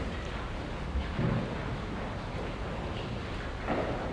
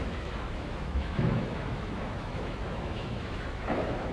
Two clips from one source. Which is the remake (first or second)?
second